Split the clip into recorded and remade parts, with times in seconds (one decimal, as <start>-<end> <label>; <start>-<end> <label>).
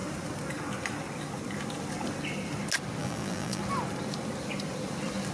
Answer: 0.0-3.0 recorded; 3.0-3.6 remade; 3.6-5.3 recorded